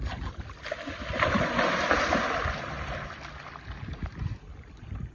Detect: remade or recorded recorded